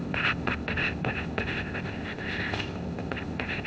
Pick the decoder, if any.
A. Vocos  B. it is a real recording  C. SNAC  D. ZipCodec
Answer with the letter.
D